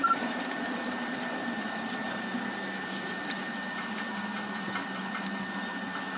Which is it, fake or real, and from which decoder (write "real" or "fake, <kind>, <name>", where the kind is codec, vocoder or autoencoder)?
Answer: fake, vocoder, BigVGAN v2